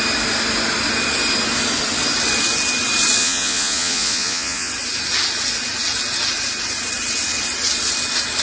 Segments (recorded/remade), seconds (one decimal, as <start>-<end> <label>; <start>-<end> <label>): 0.0-3.2 recorded; 3.2-4.7 remade; 4.7-8.4 recorded